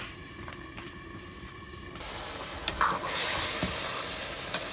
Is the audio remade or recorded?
recorded